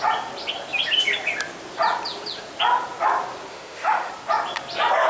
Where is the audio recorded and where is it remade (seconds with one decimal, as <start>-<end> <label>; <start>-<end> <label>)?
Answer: 0.0-3.5 recorded; 3.5-4.1 remade; 4.1-5.1 recorded